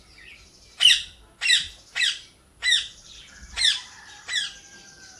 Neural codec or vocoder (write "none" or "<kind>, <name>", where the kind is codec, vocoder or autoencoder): vocoder, BigVGAN v2